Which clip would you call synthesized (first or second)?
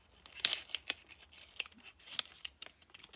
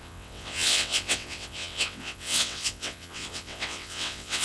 second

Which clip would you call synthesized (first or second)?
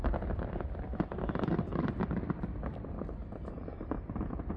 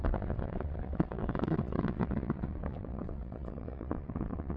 second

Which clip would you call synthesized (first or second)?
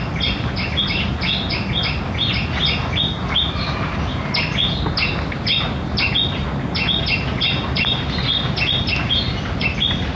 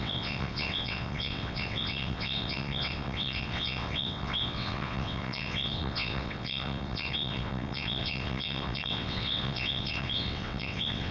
second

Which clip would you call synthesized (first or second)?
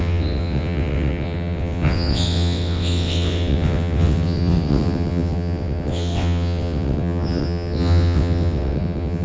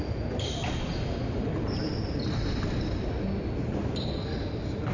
first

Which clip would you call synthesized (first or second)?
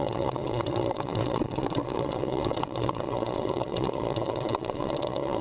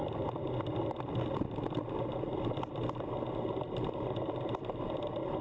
first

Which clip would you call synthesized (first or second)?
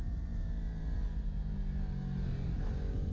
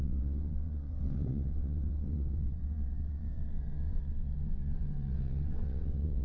second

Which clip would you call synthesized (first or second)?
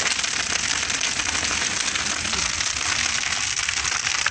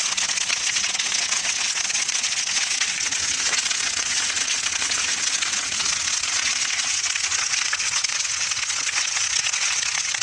second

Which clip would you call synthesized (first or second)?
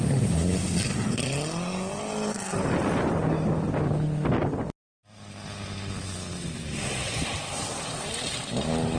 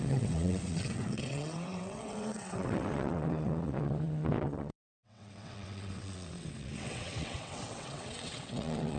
second